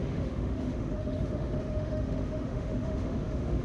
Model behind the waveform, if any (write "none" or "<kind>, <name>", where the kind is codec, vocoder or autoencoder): autoencoder, DAC-VAE